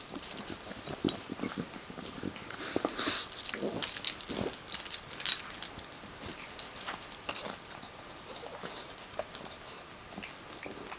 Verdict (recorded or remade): recorded